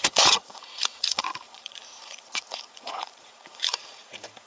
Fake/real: fake